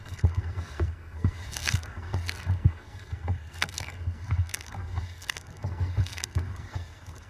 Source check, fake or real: fake